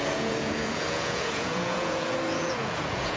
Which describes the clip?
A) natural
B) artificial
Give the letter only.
B